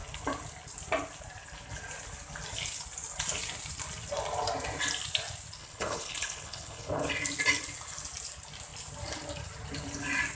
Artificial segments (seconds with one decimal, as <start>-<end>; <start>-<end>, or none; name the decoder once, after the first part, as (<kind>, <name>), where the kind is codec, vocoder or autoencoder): 5.6-7.1 (codec, HILCodec)